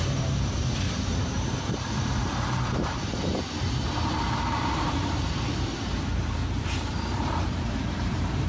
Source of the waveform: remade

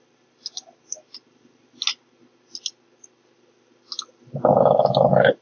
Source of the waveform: recorded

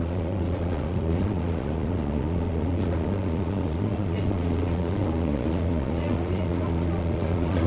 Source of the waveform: remade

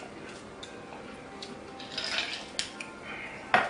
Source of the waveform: recorded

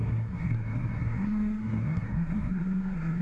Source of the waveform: remade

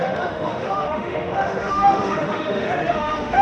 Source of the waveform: remade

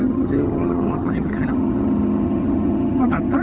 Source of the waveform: remade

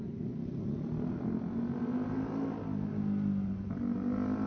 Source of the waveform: recorded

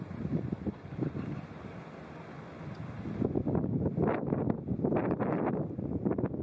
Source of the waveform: recorded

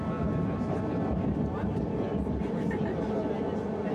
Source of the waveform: recorded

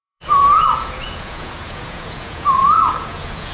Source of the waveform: remade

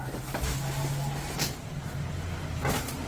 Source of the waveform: recorded